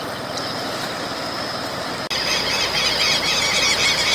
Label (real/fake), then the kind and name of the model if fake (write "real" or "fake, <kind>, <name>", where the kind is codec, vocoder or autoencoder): real